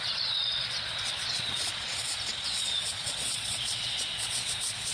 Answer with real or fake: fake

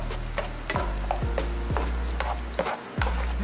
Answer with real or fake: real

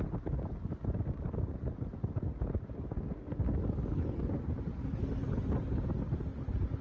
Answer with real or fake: real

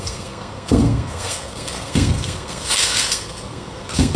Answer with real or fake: fake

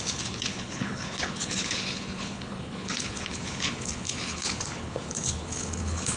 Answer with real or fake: fake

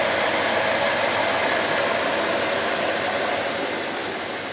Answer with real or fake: real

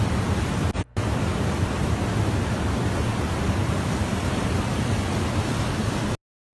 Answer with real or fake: real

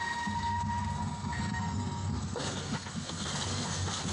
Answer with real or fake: fake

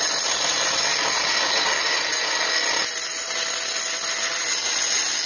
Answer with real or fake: real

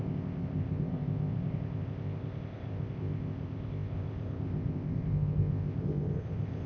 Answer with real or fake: fake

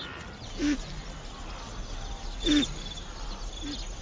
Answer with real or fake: real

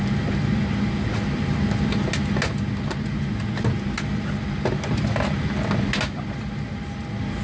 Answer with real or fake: real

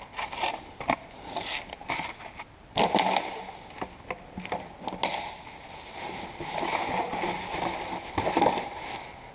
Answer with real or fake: real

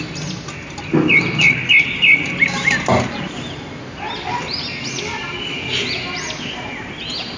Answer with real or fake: real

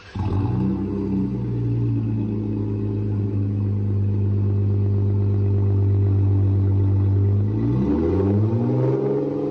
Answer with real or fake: real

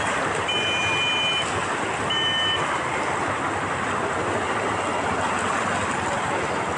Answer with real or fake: real